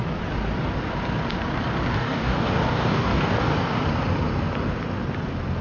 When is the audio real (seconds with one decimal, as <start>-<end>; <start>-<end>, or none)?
0.0-1.9; 3.8-5.6